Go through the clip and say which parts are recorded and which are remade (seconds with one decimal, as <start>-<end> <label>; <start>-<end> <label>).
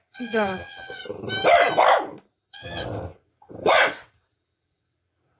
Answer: 0.0-1.0 remade; 1.0-2.5 recorded; 2.5-5.4 remade